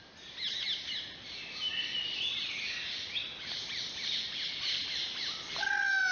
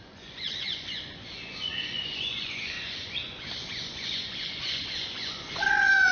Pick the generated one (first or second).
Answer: second